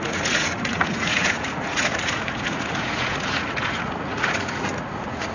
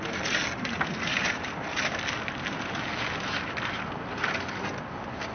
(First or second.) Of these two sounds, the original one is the second